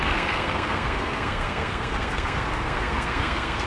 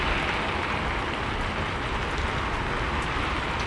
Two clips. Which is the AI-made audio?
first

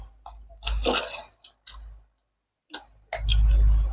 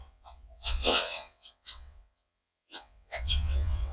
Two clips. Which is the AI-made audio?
second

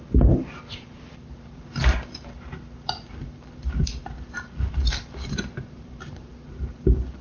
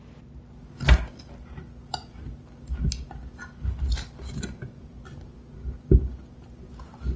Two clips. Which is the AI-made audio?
first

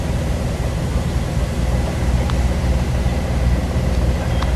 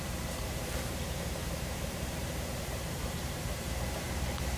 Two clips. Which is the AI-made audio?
second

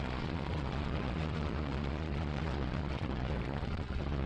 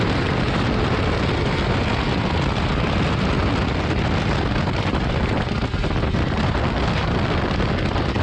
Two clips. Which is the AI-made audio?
first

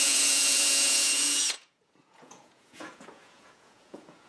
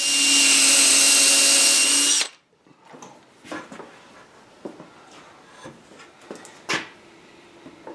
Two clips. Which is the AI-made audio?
first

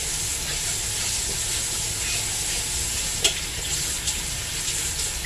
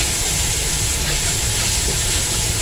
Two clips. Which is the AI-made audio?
second